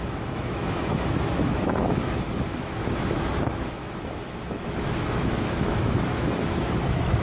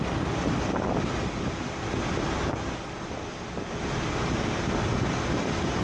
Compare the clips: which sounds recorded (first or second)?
second